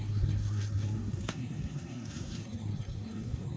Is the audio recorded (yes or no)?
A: no